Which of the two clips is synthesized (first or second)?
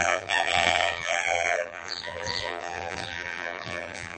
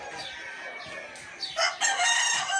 first